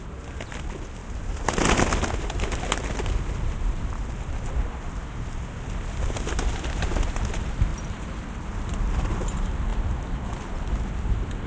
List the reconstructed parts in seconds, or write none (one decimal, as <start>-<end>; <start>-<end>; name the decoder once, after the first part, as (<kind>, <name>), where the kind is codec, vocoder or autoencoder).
none